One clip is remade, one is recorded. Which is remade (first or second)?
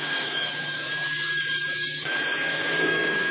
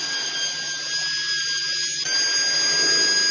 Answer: first